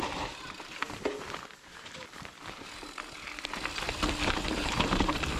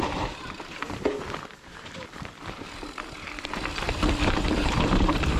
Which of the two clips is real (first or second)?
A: first